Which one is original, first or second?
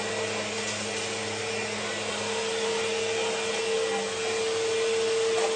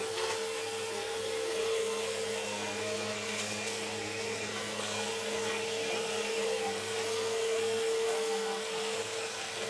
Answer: first